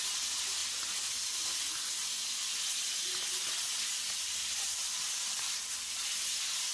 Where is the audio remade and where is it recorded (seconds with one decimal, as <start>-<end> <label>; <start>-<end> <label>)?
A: 0.0-6.7 recorded